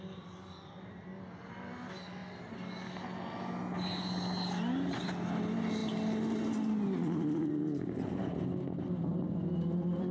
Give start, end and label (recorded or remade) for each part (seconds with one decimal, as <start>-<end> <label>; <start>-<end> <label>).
0.0-10.1 recorded